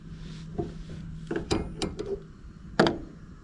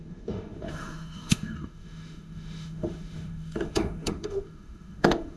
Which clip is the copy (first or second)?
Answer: second